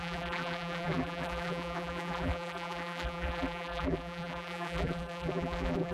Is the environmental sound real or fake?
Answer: fake